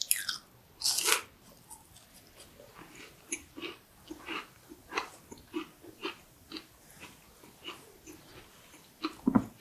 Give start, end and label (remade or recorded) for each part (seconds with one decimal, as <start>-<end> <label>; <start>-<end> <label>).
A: 0.0-9.6 recorded